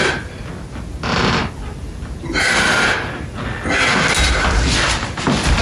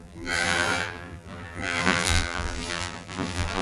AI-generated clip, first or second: second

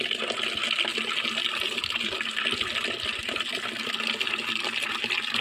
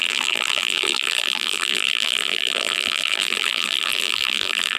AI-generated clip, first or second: second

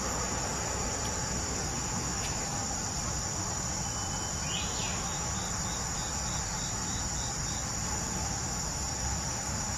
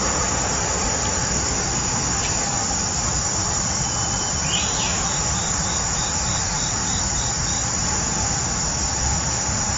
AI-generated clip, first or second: second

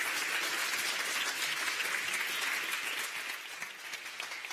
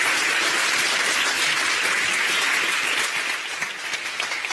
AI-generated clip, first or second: second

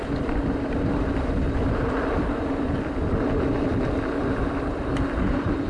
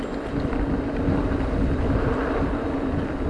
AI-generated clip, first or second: first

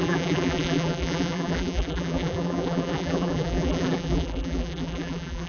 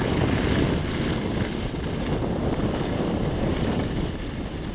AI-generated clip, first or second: first